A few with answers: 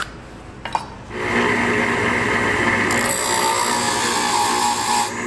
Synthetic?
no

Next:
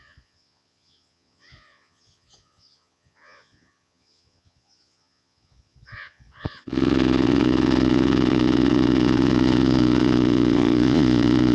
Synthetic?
yes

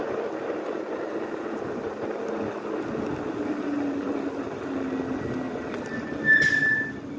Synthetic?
no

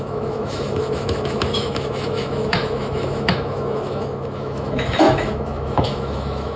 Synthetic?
yes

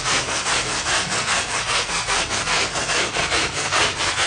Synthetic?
yes